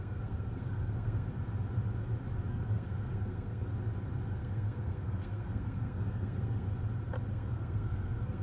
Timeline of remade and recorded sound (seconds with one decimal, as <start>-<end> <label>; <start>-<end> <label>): 0.0-1.3 remade; 1.3-2.5 recorded; 2.5-3.7 remade; 3.7-4.3 recorded; 4.3-6.7 remade; 6.7-7.3 recorded; 7.3-8.4 remade